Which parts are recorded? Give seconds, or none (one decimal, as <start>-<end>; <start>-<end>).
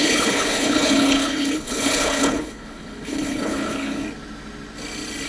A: 4.0-5.3